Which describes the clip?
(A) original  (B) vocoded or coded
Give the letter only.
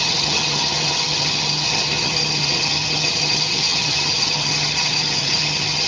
B